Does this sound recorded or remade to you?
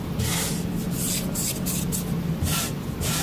recorded